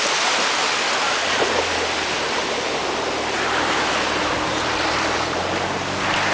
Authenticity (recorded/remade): recorded